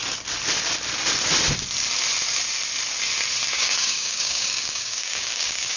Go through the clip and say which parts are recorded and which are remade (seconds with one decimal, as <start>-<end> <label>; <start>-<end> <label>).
0.0-3.5 recorded; 3.5-5.8 remade